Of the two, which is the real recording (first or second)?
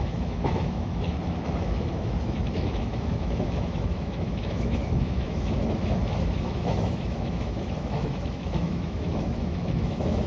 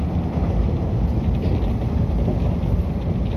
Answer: second